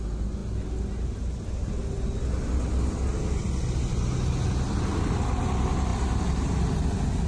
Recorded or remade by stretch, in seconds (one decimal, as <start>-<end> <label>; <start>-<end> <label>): 0.0-7.3 recorded